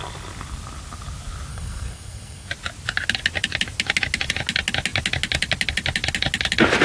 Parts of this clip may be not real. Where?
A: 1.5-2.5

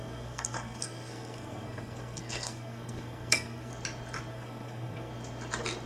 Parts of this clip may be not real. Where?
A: 0.0-3.7; 4.3-5.1